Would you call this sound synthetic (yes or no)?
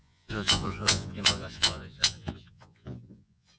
yes